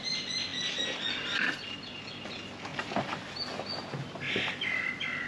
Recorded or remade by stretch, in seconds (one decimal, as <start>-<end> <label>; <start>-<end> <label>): 0.0-5.3 recorded